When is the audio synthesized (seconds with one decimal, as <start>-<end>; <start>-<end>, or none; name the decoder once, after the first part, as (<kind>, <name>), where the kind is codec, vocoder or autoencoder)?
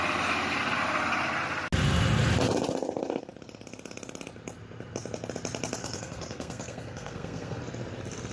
5.8-7.6 (codec, SNAC)